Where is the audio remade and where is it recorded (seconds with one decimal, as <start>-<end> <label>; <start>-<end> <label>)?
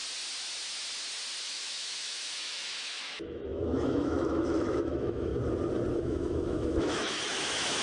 0.0-1.4 recorded; 1.4-5.3 remade; 5.3-5.9 recorded; 5.9-7.8 remade